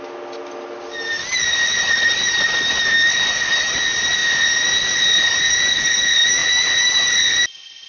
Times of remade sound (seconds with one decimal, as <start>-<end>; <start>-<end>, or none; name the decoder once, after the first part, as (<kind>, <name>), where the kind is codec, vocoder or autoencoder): none